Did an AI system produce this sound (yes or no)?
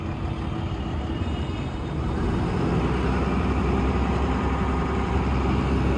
no